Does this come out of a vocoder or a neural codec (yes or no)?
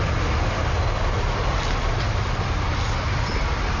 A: no